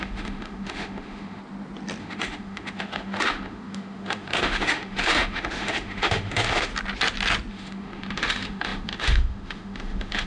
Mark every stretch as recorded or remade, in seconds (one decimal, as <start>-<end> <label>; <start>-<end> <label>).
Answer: 0.0-1.4 remade; 1.4-2.0 recorded; 2.0-6.7 remade; 6.7-7.5 recorded; 7.5-10.3 remade